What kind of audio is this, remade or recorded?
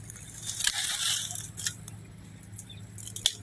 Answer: recorded